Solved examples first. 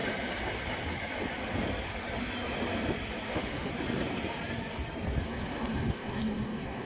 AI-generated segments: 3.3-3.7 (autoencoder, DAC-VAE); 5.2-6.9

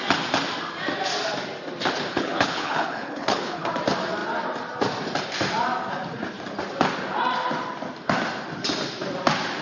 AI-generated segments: 2.1-3.7 (codec, HILCodec)

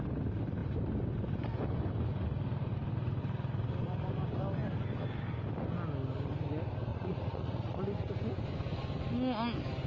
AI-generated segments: 6.9-7.8 (vocoder, Vocos)

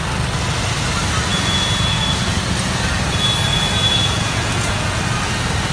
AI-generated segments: 1.3-2.4 (vocoder, Vocos); 3.5-5.0

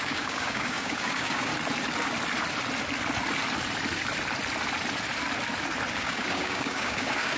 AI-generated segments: 0.0-1.5 (codec, DAC); 5.9-7.4

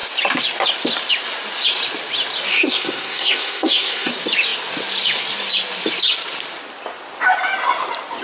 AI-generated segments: 2.5-4.1 (codec, SNAC)